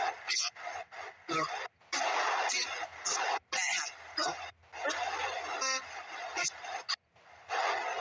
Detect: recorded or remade recorded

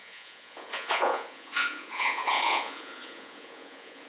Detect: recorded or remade remade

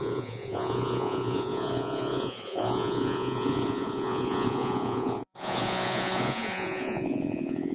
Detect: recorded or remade remade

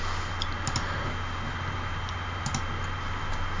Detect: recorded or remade recorded